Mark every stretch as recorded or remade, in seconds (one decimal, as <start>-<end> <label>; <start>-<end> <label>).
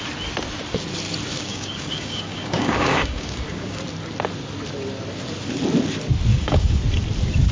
0.0-1.3 recorded; 1.3-3.8 remade; 3.8-6.3 recorded; 6.3-6.8 remade; 6.8-7.5 recorded